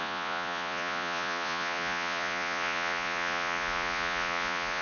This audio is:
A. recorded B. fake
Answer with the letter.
B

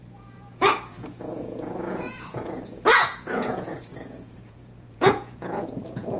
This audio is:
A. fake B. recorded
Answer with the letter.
A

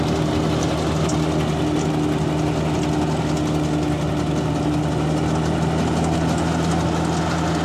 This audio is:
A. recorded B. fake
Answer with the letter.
A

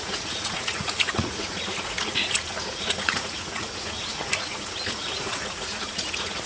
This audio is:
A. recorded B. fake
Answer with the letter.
B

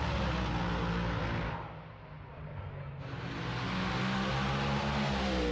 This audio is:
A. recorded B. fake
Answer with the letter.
A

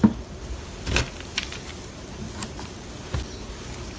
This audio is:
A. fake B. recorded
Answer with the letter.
B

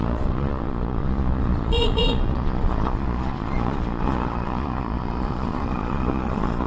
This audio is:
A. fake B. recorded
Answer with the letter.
A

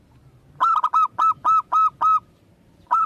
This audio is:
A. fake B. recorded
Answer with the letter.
B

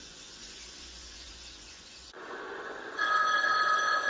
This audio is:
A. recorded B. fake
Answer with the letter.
B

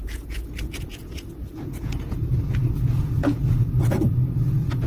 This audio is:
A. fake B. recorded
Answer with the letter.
A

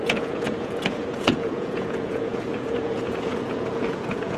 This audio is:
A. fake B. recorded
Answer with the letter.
A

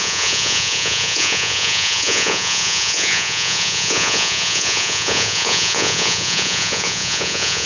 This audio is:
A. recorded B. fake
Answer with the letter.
B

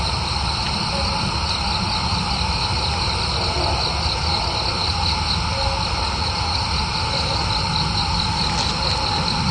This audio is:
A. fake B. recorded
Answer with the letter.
B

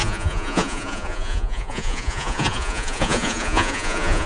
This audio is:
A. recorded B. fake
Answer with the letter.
B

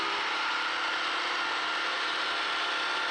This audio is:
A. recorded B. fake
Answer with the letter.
A